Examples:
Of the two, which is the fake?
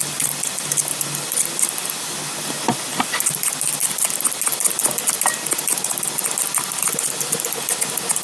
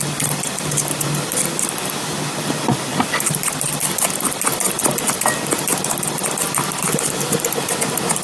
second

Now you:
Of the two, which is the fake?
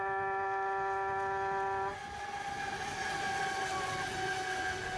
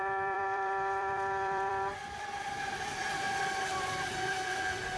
second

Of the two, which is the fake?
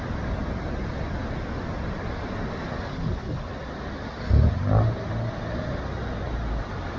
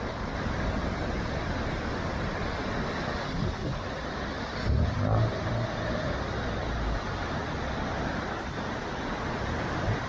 second